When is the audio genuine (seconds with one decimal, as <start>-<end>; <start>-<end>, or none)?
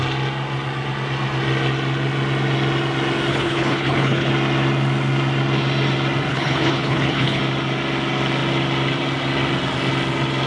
0.0-3.3; 4.3-6.3; 7.4-10.5